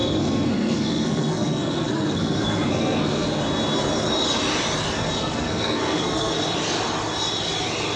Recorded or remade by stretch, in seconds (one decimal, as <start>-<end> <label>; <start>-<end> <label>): 0.0-3.4 remade; 3.4-5.2 recorded; 5.2-6.4 remade; 6.4-8.0 recorded

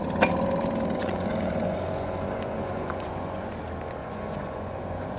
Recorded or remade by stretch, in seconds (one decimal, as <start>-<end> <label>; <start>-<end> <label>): 0.0-1.0 recorded; 1.0-3.5 remade; 3.5-4.0 recorded; 4.0-5.2 remade

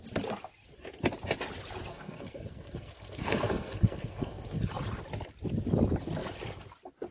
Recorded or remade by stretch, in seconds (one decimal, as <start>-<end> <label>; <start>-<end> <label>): 0.0-1.9 recorded; 1.9-4.6 remade; 4.6-7.1 recorded

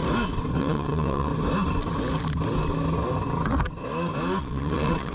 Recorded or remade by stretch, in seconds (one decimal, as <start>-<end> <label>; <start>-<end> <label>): 0.0-0.6 recorded; 0.6-1.3 remade; 1.3-4.4 recorded; 4.4-5.1 remade

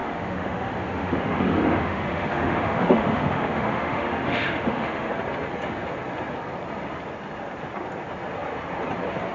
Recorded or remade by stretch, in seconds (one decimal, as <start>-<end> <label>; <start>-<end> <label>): 0.0-5.1 remade; 5.1-9.3 recorded

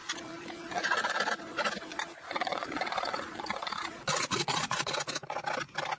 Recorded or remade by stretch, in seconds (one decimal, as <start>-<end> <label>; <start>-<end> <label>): 0.0-1.1 remade; 1.1-1.9 recorded; 1.9-4.9 remade; 4.9-6.0 recorded

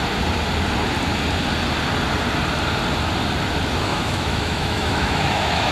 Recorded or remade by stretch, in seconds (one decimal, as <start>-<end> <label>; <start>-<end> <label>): 0.0-3.9 recorded; 3.9-5.7 remade

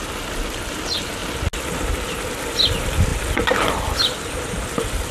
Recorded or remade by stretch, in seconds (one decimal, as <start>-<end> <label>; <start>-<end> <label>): 0.0-5.1 recorded